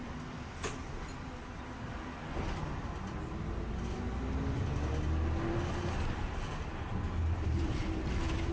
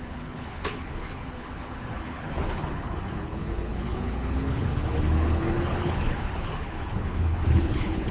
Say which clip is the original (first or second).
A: first